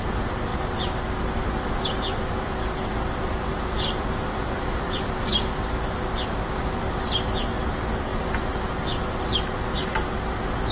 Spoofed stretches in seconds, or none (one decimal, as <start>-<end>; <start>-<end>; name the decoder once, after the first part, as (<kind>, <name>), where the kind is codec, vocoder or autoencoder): 0.5-1.0 (vocoder, BigVGAN v2); 3.5-5.4